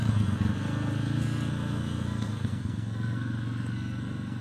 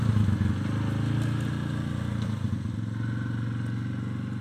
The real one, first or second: second